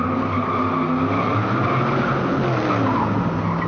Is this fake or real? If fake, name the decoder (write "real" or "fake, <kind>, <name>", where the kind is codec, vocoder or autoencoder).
real